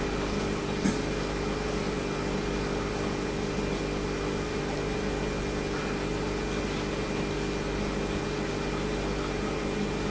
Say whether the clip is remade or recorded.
recorded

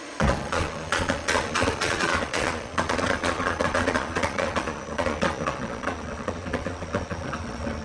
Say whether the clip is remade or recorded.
remade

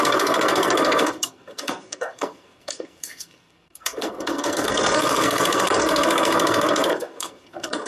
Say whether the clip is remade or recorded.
remade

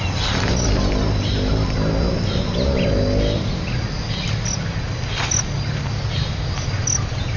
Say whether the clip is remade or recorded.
recorded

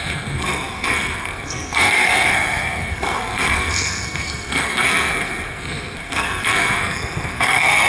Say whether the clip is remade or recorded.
remade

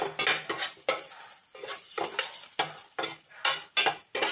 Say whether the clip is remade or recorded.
recorded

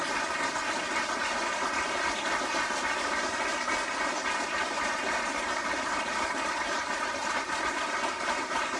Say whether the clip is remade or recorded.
remade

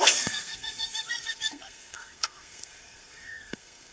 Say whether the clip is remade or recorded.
remade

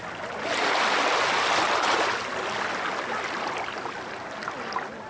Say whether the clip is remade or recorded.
recorded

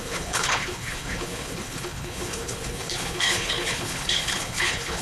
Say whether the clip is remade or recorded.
remade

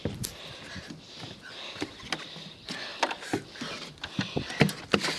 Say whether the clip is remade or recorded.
recorded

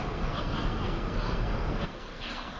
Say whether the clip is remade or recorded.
remade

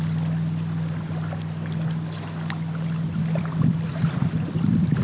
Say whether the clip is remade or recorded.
recorded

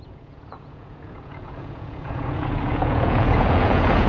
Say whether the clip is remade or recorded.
remade